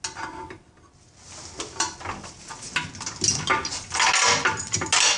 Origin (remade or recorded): recorded